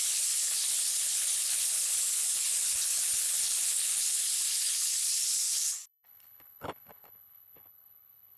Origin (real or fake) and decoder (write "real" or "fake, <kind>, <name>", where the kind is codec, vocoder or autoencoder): fake, codec, HILCodec